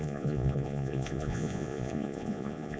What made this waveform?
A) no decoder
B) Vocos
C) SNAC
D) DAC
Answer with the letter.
B